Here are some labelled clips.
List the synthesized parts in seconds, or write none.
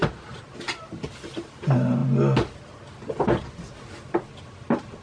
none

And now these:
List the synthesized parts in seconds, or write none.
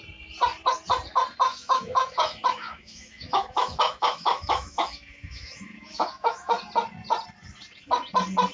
1.5-6.6 (autoencoder, DAC-VAE)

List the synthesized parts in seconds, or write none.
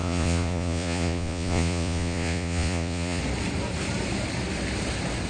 0.0-3.2 (vocoder, Vocos)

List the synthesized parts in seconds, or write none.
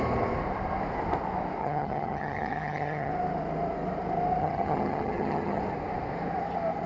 1.6-3.1 (vocoder, HiFi-GAN); 4.4-5.6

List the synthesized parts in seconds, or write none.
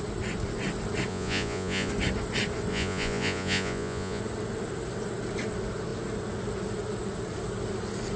1.1-1.9 (vocoder, Vocos); 2.7-4.2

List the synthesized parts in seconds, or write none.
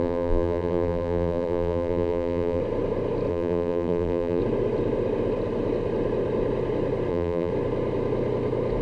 0.0-2.6 (vocoder, BigVGAN v2); 3.3-4.4; 7.1-7.5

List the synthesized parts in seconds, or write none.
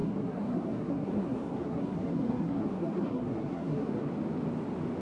0.0-4.1 (codec, SNAC)